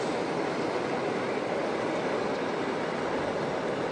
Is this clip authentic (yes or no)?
yes